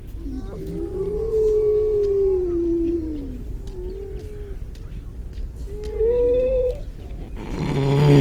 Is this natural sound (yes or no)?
yes